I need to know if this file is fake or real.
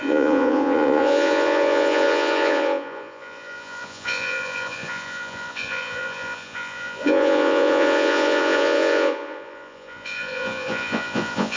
fake